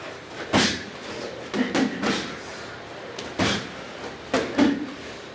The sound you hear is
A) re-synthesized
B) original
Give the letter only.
B